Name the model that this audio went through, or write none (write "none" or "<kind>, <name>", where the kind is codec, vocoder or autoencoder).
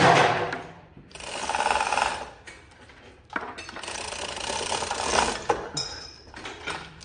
vocoder, BigVGAN v2